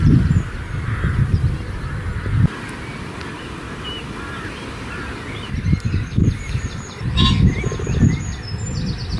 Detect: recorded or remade recorded